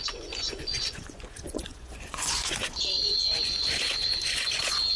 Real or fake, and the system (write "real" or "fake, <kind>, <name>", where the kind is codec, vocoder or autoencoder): fake, vocoder, Vocos